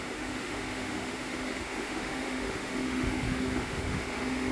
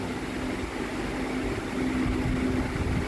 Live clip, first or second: second